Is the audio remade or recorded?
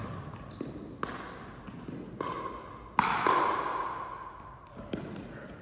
recorded